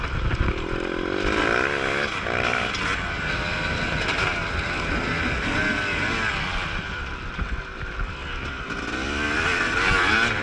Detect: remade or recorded recorded